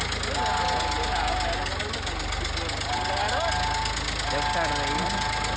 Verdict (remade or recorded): recorded